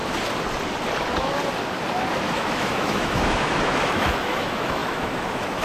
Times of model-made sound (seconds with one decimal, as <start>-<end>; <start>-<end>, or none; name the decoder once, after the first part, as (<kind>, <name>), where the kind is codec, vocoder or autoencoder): 2.2-5.6 (autoencoder, DAC-VAE)